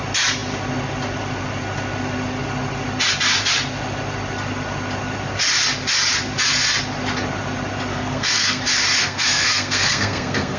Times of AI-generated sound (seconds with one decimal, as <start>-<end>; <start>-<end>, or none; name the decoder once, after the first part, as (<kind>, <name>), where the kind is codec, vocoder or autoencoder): 7.9-8.6 (codec, SNAC); 9.0-10.6